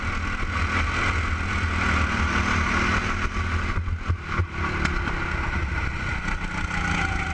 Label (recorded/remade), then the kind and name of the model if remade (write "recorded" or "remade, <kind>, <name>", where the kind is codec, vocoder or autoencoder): recorded